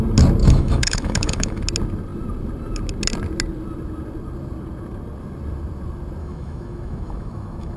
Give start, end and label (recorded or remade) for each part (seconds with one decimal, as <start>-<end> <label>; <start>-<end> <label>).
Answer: 0.0-0.4 recorded; 0.4-1.6 remade; 1.6-6.2 recorded; 6.2-7.8 remade